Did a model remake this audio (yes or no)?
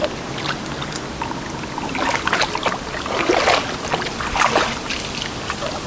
no